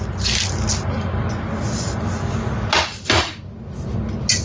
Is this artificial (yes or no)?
no